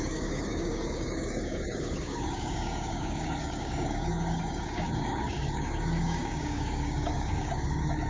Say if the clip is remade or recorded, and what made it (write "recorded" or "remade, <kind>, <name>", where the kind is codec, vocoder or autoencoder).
remade, codec, DAC